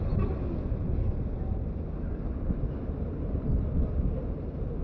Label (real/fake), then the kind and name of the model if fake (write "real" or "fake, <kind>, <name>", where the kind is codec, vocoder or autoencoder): real